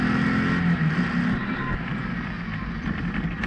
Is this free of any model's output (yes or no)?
yes